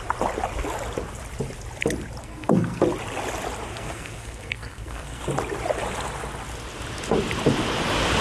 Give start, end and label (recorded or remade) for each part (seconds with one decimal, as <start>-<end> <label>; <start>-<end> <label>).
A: 0.0-2.2 recorded; 2.2-2.8 remade; 2.8-3.7 recorded; 3.7-5.2 remade; 5.2-8.2 recorded